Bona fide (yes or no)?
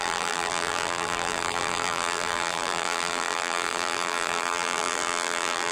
no